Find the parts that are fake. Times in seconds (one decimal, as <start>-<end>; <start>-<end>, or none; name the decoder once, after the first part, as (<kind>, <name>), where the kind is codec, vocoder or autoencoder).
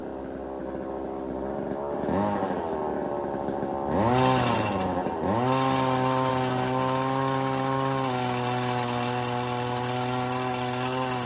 none